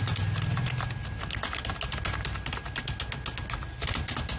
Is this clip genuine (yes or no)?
yes